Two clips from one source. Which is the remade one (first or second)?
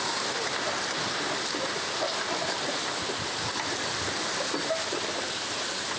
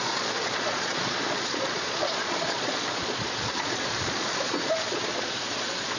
second